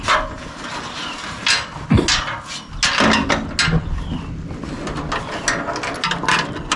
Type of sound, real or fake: real